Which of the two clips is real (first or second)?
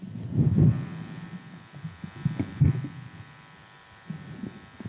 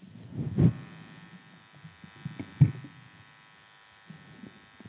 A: second